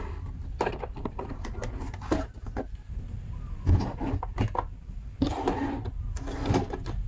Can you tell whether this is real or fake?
real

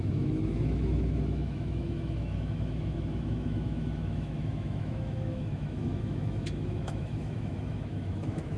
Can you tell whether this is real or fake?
fake